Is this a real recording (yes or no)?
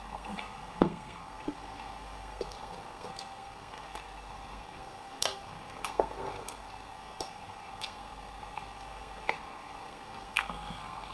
no